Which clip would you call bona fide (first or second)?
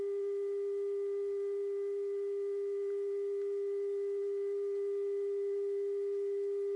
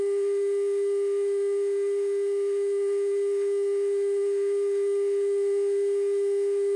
first